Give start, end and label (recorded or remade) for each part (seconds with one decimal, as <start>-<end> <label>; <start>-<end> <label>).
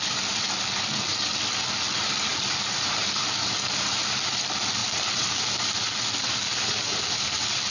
0.0-2.3 recorded; 2.3-4.3 remade; 4.3-4.8 recorded; 4.8-5.8 remade; 5.8-7.7 recorded